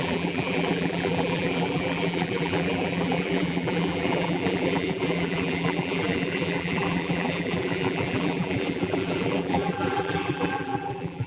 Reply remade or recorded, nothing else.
remade